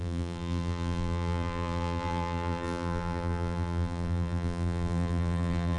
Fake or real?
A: fake